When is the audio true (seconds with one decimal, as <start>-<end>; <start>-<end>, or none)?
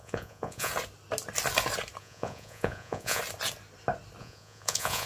0.7-2.0; 3.2-4.2